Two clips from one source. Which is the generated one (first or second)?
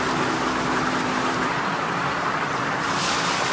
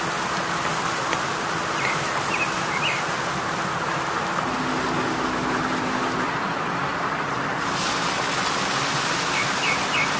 first